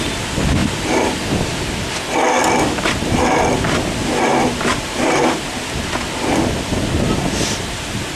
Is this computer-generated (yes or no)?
no